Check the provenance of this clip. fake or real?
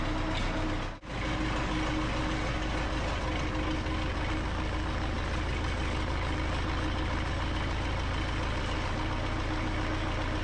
real